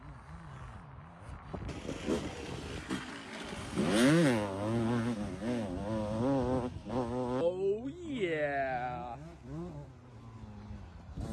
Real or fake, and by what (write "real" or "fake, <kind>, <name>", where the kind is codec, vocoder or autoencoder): real